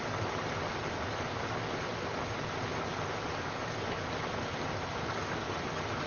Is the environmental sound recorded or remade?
recorded